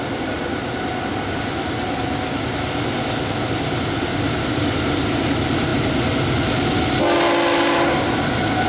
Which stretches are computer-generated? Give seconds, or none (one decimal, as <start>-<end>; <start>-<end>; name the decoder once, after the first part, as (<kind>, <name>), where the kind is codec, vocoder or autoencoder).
none